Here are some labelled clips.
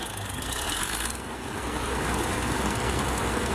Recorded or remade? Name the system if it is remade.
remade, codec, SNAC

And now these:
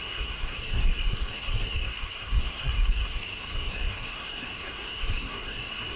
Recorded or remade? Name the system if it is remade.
remade, codec, SNAC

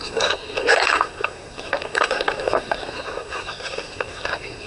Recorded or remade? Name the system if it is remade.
remade, codec, SNAC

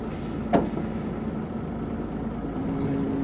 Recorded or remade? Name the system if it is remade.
recorded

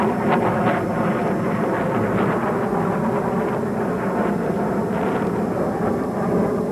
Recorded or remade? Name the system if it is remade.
recorded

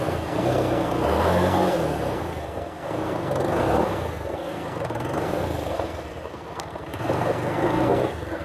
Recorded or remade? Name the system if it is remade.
remade, codec, SNAC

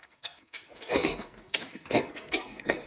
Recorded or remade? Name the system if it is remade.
remade, codec, SNAC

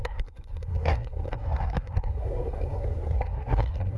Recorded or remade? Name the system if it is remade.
remade, codec, SNAC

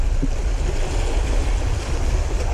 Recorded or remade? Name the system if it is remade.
recorded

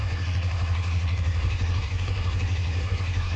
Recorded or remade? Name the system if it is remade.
remade, codec, SNAC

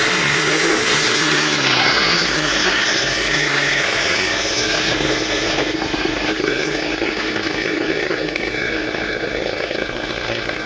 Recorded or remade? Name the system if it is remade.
remade, codec, SNAC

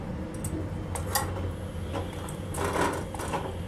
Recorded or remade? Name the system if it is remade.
recorded